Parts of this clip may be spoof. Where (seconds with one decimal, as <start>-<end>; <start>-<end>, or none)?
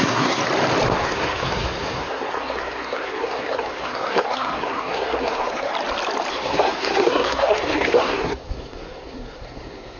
0.0-0.4; 0.9-5.7; 6.3-10.0